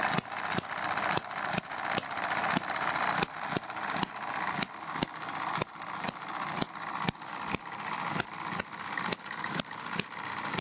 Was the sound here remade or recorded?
recorded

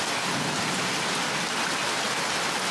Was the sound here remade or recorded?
recorded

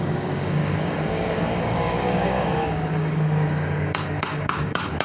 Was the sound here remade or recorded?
remade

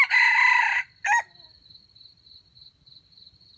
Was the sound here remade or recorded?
recorded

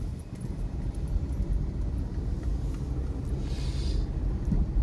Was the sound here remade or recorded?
recorded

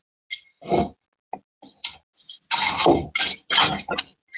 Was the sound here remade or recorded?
recorded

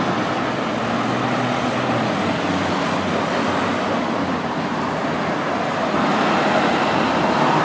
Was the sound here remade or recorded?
recorded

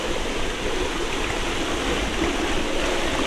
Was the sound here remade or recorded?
recorded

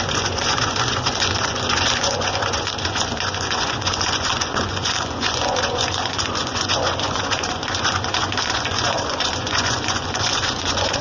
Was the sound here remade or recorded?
remade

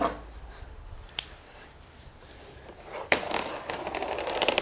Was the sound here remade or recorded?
recorded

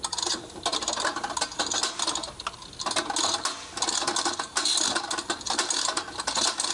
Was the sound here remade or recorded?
recorded